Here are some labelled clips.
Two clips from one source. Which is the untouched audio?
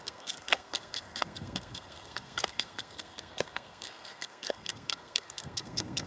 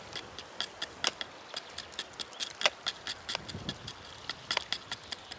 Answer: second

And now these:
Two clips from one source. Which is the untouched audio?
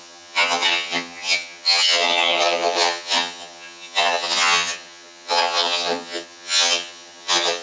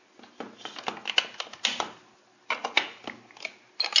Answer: second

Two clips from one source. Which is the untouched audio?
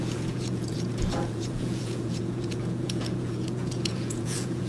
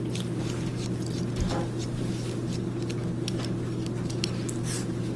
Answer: second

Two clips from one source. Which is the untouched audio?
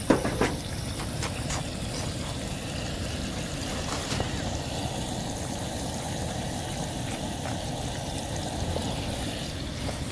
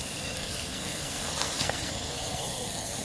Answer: first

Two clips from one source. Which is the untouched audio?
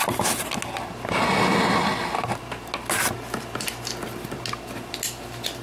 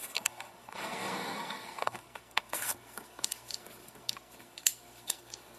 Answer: first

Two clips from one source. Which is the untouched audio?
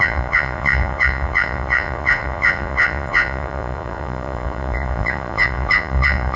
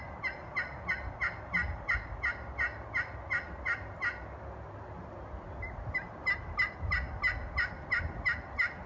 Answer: second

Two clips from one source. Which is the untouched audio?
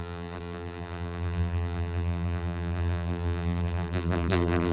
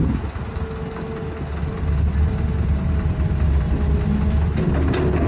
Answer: second